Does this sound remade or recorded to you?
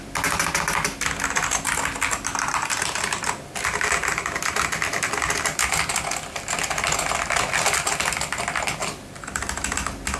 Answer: recorded